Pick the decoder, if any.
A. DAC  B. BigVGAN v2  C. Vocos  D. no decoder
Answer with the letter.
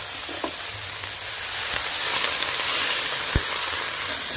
D